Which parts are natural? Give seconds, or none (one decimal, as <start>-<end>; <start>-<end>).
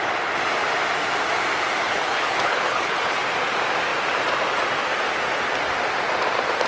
0.0-1.8; 3.2-6.7